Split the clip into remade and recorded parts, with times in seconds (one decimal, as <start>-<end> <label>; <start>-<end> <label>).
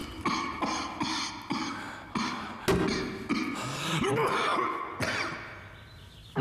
0.0-6.4 recorded